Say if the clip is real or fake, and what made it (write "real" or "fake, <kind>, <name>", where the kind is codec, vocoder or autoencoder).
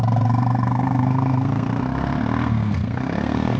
fake, codec, SNAC